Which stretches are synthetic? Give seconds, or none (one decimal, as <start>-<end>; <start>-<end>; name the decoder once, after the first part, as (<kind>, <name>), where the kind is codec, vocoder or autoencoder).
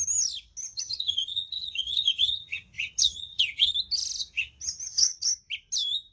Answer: 0.6-3.7 (vocoder, HiFi-GAN); 4.2-5.3